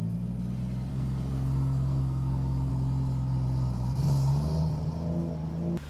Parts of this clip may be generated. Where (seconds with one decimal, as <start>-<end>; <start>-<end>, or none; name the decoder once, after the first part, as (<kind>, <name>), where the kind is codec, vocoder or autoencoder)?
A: 0.9-2.7 (codec, SNAC)